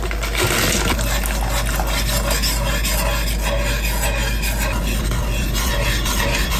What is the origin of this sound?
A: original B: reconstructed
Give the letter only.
A